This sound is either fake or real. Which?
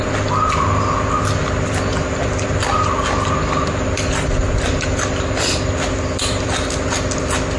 real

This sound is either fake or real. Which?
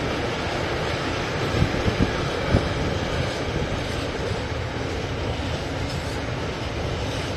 real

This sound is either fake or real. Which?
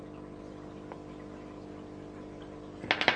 real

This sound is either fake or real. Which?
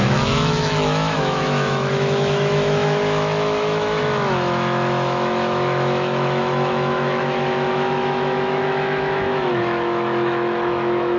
fake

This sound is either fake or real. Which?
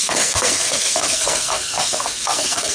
fake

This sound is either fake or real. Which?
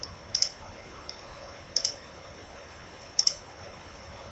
fake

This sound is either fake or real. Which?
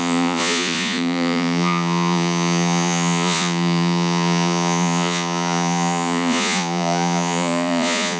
fake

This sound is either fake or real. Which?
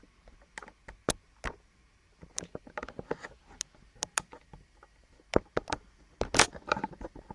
real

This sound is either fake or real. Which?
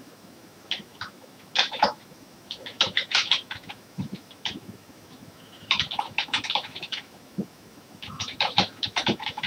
fake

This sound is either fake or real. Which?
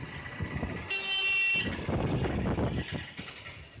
real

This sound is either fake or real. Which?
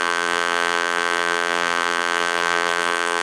fake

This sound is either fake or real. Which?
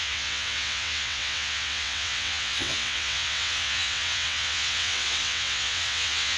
fake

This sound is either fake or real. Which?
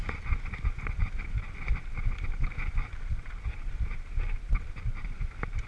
real